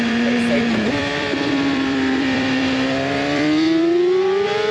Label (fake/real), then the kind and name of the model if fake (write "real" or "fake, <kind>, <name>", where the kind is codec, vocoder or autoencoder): fake, vocoder, BigVGAN v2